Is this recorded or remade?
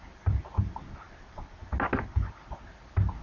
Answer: recorded